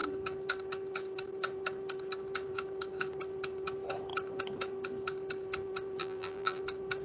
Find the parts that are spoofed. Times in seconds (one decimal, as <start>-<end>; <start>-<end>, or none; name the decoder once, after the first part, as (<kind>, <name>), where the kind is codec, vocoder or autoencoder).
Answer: 6.0-6.6 (vocoder, BigVGAN v2)